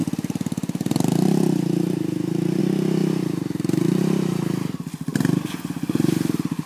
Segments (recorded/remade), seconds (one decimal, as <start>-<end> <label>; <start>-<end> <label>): 0.0-2.6 remade; 2.6-3.0 recorded; 3.0-4.0 remade; 4.0-6.7 recorded

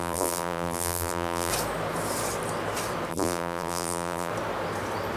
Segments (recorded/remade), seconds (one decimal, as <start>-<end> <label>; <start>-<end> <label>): 0.0-1.5 remade; 1.5-3.1 recorded; 3.1-4.3 remade; 4.3-5.2 recorded

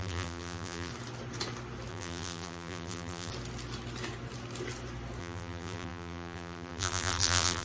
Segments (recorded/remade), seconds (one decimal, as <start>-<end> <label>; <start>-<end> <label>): 0.0-0.9 remade; 0.9-1.9 recorded; 1.9-3.3 remade; 3.3-5.2 recorded; 5.2-7.6 remade

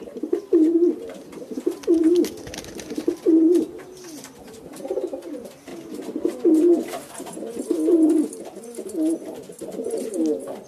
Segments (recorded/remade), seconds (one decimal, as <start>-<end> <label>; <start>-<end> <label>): 0.0-10.7 recorded

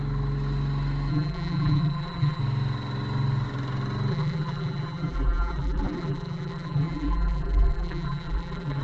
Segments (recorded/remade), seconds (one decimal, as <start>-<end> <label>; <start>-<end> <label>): 0.0-1.1 recorded; 1.1-2.4 remade; 2.4-4.1 recorded; 4.1-8.8 remade

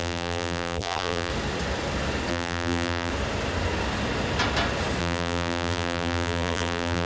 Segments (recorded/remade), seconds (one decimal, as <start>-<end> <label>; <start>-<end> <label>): 0.0-1.3 remade; 1.3-2.3 recorded; 2.3-3.1 remade; 3.1-5.0 recorded; 5.0-7.1 remade